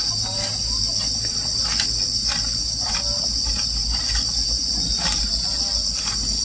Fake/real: real